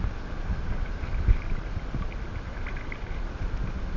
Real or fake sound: real